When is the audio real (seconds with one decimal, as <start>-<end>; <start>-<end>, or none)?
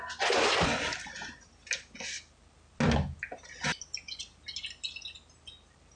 0.0-6.0